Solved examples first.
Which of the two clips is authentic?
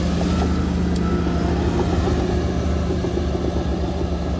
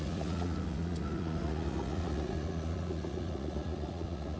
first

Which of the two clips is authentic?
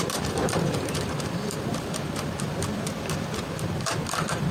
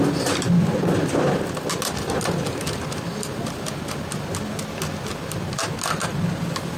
second